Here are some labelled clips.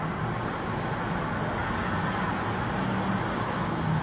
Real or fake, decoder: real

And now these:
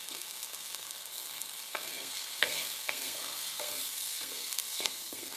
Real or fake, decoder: fake, codec, SNAC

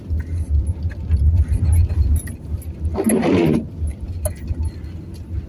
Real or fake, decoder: real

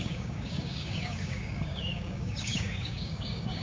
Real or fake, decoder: fake, codec, DAC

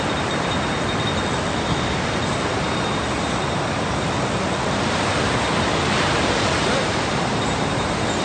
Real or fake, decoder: real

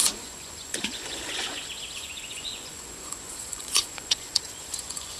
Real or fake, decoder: fake, vocoder, Vocos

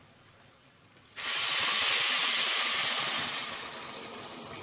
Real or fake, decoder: real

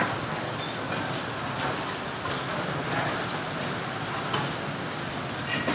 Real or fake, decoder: real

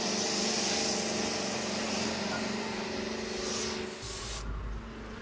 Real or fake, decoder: real